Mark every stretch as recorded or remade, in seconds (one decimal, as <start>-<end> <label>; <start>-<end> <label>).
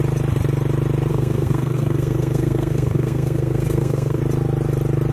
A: 0.0-1.1 recorded; 1.1-4.2 remade; 4.2-5.1 recorded